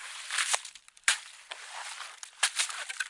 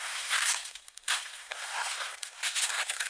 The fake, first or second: second